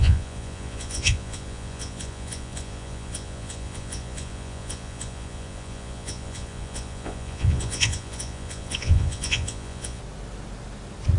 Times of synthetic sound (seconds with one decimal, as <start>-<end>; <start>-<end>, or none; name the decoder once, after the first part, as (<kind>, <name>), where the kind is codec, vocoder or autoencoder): 0.0-10.0 (vocoder, Vocos)